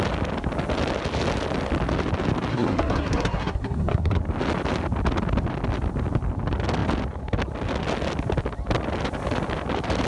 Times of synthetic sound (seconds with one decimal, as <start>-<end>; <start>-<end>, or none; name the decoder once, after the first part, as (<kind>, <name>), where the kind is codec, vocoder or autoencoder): 2.5-4.2 (codec, SNAC)